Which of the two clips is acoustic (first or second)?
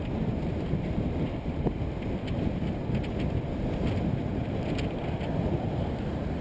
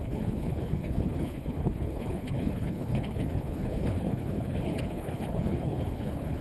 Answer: first